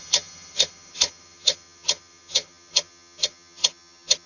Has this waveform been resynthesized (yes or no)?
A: yes